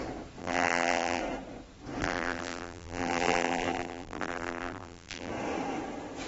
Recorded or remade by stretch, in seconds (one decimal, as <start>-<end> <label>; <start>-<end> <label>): 0.0-0.4 recorded; 0.4-1.2 remade; 1.2-2.0 recorded; 2.0-5.3 remade; 5.3-6.3 recorded